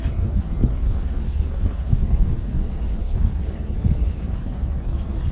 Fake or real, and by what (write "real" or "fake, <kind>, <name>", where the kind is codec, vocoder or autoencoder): fake, codec, SNAC